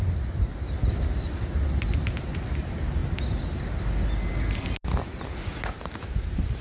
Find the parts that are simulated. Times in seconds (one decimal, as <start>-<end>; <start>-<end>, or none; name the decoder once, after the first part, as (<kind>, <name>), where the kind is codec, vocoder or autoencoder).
none

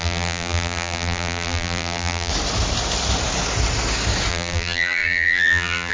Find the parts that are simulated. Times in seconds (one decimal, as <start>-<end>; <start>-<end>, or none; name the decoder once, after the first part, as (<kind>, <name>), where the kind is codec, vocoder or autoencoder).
0.0-2.3 (vocoder, BigVGAN v2); 4.3-5.9

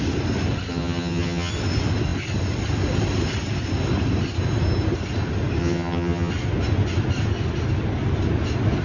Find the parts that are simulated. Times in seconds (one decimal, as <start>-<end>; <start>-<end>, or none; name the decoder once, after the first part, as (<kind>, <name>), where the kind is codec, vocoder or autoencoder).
0.7-1.5 (vocoder, HiFi-GAN); 5.6-6.3

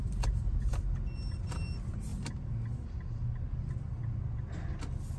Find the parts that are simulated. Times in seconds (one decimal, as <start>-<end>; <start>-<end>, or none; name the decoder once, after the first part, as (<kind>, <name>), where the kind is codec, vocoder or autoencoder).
0.0-0.8 (vocoder, BigVGAN v2)

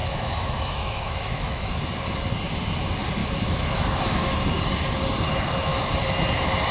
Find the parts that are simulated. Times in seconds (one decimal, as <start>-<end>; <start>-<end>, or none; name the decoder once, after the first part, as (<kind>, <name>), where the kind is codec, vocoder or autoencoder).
0.0-1.8 (autoencoder, DAC-VAE); 3.2-4.4

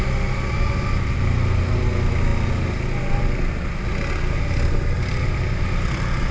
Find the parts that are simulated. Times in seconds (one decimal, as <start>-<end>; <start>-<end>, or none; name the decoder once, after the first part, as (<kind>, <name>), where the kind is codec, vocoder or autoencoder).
none

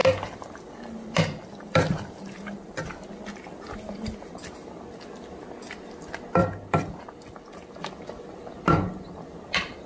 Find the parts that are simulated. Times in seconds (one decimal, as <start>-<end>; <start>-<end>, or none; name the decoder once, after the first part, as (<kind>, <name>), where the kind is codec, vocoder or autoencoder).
0.0-3.2 (vocoder, BigVGAN v2); 6.4-7.8

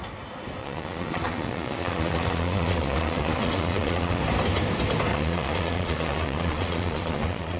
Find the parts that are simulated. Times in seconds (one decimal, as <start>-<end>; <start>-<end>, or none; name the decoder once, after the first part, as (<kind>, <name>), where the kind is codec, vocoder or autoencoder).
0.6-4.2 (vocoder, Vocos); 5.1-7.6